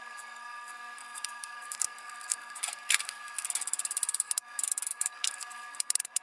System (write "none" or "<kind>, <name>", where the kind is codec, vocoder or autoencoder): codec, SNAC